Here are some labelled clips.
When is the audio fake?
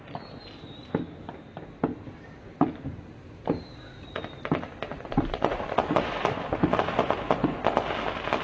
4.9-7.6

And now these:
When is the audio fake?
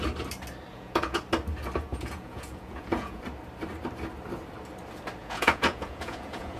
0.7-1.2; 1.9-3.2; 5.2-6.6